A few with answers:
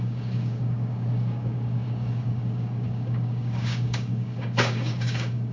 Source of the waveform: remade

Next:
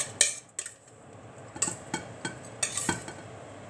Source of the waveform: recorded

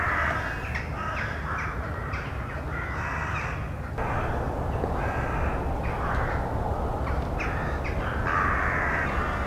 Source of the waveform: recorded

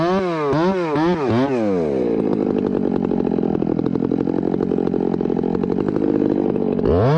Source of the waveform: recorded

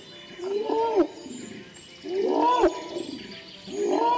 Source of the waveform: recorded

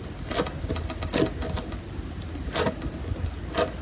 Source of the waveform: recorded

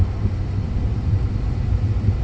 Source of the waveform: recorded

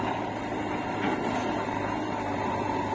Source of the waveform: recorded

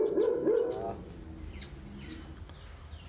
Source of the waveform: recorded